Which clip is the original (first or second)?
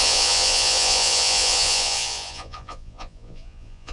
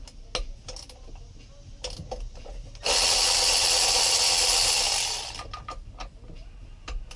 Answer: second